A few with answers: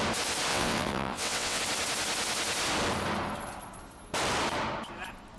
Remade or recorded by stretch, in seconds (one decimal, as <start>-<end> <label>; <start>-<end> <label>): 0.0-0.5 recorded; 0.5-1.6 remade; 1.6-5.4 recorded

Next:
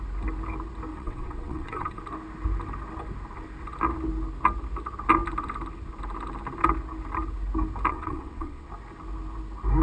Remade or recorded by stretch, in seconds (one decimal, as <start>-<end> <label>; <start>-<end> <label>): 0.0-0.9 recorded; 0.9-2.0 remade; 2.0-7.9 recorded; 7.9-8.7 remade; 8.7-9.8 recorded

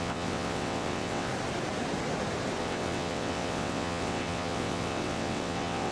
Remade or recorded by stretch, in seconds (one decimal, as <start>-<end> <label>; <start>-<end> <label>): 0.0-1.3 remade; 1.3-2.6 recorded; 2.6-5.9 remade

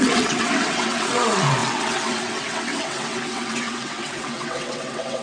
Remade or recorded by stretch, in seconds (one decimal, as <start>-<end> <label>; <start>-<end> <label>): 0.0-5.2 remade